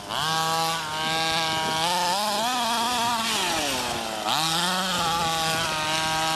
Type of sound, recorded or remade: recorded